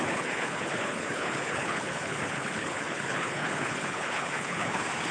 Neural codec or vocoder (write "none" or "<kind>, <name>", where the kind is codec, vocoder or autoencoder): codec, HILCodec